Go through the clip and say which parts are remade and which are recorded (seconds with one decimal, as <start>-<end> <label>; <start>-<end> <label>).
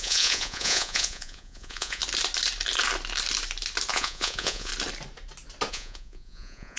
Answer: 0.0-2.0 remade; 2.0-3.9 recorded; 3.9-4.7 remade; 4.7-5.7 recorded; 5.7-6.8 remade